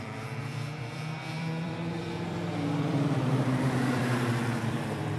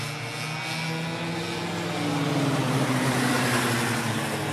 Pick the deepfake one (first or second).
first